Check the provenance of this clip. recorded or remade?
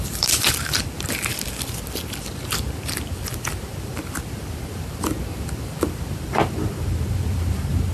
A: remade